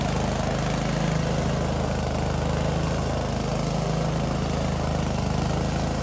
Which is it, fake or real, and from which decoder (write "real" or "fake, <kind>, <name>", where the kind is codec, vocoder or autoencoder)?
real